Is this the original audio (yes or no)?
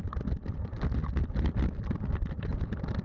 yes